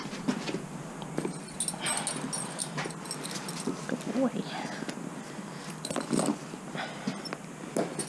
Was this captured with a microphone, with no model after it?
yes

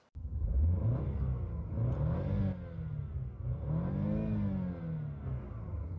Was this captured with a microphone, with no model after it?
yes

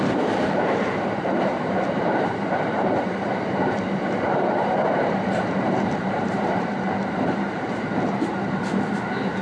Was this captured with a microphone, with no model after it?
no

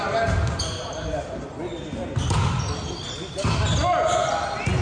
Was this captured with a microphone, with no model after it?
yes